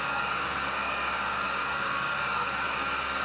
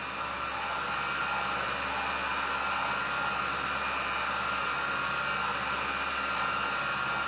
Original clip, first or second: second